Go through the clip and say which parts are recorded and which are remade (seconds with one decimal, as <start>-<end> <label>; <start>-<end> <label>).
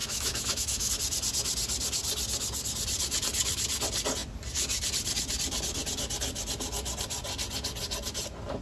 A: 0.0-0.9 remade; 0.9-8.6 recorded